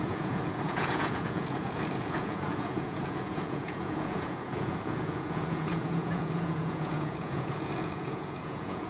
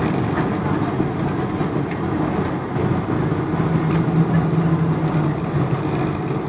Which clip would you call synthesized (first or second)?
first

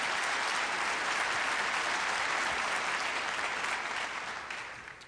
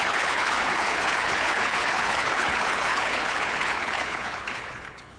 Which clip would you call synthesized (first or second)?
second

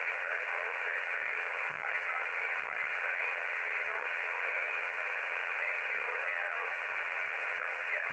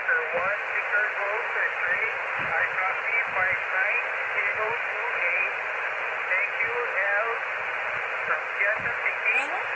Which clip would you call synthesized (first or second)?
first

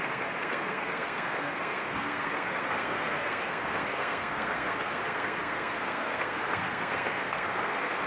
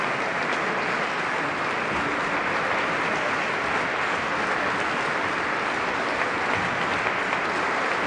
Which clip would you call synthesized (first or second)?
first